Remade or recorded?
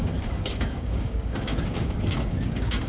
remade